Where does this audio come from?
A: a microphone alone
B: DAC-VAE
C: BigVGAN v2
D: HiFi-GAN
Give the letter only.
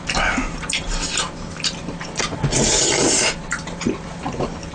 C